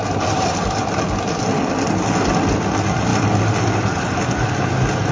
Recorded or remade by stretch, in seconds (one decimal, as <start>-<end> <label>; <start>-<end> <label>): 0.0-5.1 recorded